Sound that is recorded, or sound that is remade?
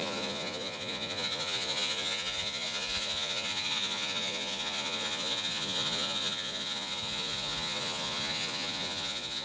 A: remade